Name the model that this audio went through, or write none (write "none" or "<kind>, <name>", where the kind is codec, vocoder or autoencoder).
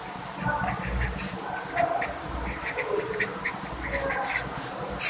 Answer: none